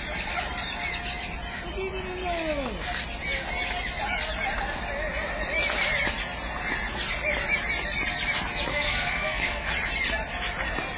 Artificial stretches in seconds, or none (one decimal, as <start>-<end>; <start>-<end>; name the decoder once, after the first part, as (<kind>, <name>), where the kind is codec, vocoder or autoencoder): 8.7-9.7 (codec, SNAC)